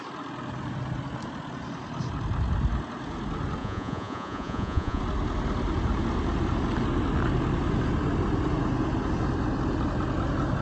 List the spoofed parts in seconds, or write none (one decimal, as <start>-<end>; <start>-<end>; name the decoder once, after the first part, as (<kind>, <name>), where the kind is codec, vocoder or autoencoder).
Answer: 3.6-5.0 (vocoder, Vocos)